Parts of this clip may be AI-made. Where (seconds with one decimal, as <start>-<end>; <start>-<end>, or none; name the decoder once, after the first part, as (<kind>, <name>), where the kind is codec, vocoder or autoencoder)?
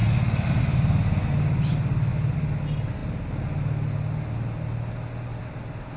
none